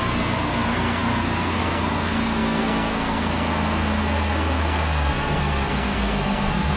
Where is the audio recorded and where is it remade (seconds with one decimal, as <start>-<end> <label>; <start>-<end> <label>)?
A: 0.0-6.8 remade